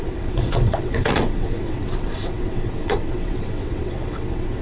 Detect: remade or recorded remade